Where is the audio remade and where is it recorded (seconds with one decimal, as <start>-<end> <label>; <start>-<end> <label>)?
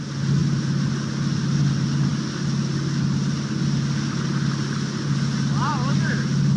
0.0-6.6 recorded